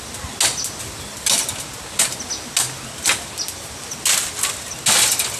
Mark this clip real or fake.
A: real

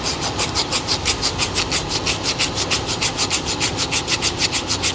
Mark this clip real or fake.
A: real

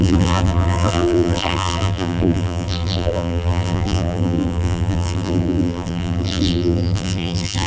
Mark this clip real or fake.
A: fake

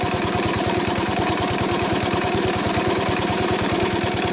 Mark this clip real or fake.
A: fake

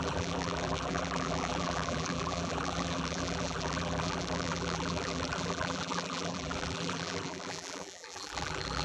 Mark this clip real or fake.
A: fake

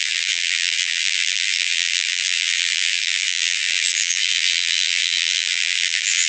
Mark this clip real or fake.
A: fake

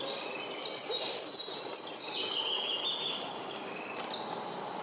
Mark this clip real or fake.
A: real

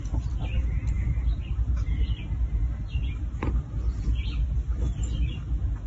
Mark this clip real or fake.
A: real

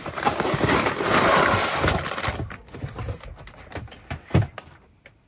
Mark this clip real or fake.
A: real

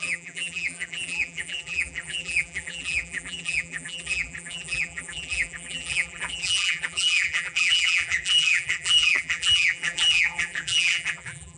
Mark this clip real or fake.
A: fake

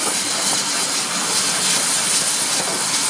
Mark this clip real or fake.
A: real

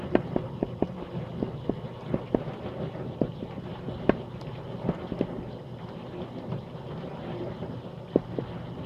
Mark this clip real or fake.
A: real